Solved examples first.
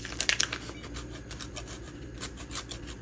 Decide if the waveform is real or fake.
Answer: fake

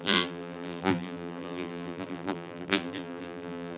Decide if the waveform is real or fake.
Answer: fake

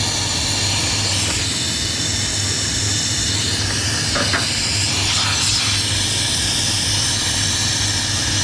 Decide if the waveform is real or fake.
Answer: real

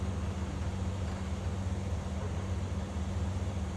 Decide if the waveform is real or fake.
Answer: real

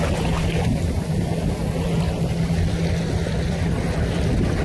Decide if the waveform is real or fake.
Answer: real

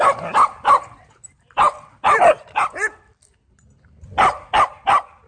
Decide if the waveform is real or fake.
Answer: fake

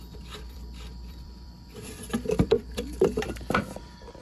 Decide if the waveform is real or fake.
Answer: fake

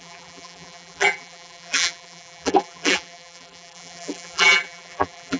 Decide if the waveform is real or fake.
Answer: fake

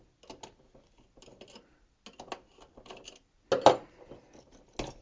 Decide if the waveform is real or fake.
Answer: real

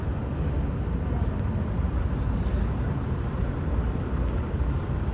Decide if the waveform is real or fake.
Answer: real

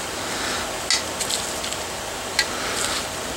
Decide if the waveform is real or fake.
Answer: real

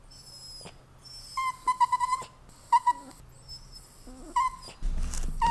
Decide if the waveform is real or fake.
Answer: real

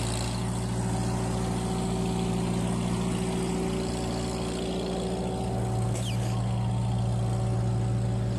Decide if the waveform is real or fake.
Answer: real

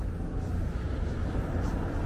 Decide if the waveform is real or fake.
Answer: real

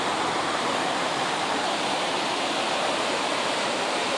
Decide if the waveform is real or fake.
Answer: fake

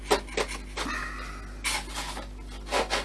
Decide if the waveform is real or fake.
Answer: real